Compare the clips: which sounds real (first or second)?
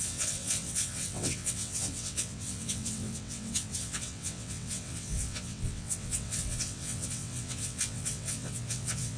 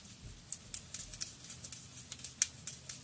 second